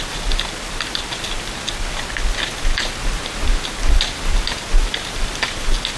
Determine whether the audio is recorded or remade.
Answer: recorded